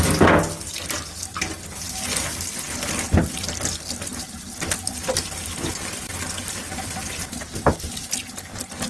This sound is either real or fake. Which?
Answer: real